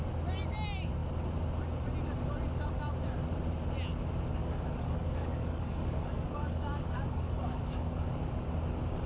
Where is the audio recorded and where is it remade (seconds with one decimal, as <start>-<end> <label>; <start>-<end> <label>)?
0.0-4.4 recorded; 4.4-8.1 remade; 8.1-9.1 recorded